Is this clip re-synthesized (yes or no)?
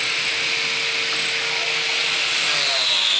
no